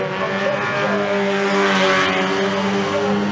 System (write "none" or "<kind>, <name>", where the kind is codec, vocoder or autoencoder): none